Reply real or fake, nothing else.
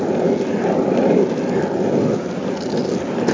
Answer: real